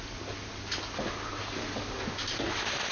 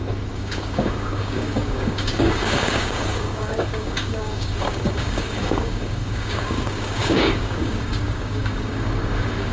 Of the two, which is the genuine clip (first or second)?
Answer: first